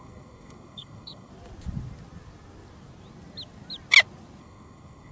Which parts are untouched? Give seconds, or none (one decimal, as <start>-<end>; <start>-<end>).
1.3-4.4